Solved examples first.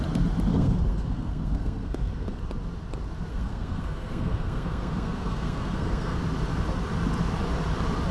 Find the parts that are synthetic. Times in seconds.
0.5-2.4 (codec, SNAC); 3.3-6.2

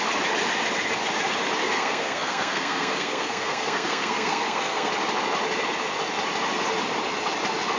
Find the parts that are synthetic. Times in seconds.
1.6-4.9 (codec, SNAC)

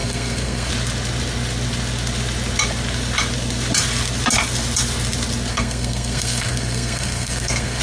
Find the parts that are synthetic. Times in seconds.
0.0-0.7 (codec, SNAC); 5.5-7.8

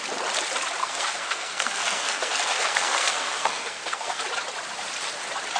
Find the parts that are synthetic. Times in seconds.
0.8-4.2 (codec, SNAC)

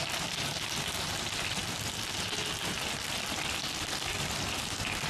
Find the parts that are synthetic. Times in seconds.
none